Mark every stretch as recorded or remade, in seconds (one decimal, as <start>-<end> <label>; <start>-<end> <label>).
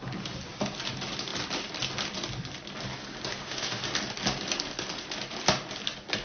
0.0-3.3 recorded; 3.3-3.8 remade; 3.8-6.2 recorded